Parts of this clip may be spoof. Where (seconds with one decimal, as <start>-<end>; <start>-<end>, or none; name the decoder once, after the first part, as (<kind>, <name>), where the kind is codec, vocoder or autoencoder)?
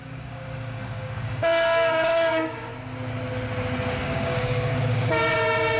0.0-2.7 (codec, DAC); 4.0-5.8